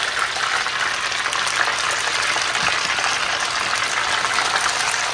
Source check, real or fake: real